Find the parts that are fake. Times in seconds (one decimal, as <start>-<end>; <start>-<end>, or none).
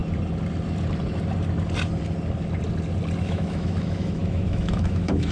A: 3.2-5.3